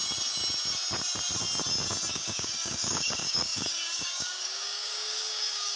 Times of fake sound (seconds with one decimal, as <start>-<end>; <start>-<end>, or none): 2.1-5.8